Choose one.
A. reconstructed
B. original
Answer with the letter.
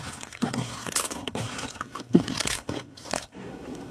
A